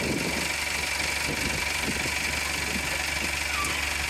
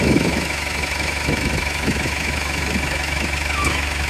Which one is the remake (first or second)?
second